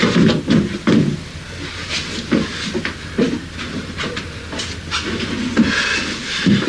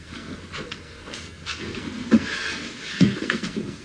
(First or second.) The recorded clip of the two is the first